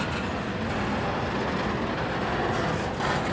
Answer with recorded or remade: recorded